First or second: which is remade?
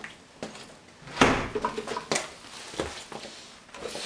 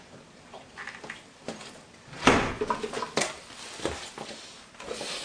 second